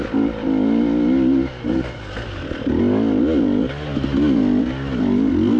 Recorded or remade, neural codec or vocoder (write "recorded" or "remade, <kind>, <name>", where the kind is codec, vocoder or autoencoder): recorded